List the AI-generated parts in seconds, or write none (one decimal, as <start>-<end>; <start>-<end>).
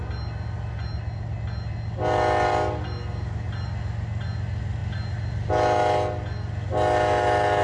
none